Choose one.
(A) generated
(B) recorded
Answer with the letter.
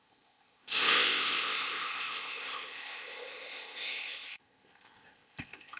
A